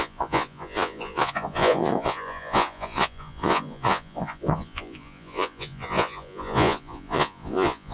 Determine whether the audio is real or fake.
fake